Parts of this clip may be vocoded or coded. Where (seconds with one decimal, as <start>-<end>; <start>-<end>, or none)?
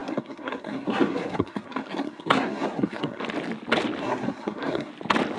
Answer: 0.0-3.2; 4.0-4.9